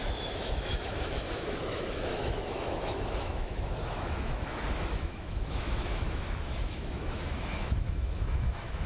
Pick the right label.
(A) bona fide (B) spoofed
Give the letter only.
B